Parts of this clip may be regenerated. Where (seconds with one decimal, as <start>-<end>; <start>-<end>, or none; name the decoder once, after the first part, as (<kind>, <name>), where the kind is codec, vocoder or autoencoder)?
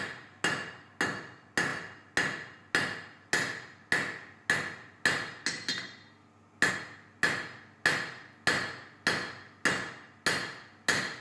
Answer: none